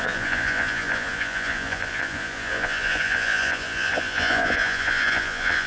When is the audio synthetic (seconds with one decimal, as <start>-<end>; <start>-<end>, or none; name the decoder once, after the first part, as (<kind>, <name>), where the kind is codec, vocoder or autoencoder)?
0.0-5.7 (vocoder, Vocos)